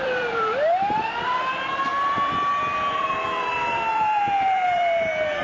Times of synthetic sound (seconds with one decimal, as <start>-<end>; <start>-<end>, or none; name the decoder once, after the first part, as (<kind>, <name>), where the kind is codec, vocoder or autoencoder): 0.0-5.4 (vocoder, BigVGAN v2)